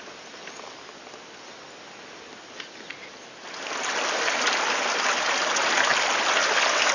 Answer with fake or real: real